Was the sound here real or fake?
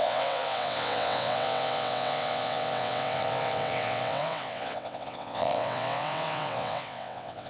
fake